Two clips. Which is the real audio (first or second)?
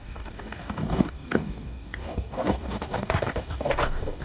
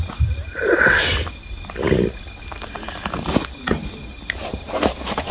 second